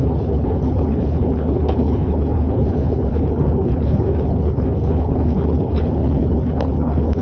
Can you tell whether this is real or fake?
fake